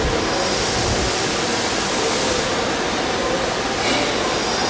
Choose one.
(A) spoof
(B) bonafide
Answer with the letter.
B